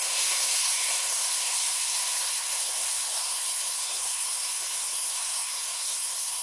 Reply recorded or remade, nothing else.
remade